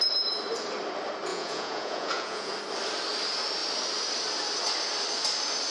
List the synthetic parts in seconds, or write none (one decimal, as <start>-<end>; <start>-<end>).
1.3-2.5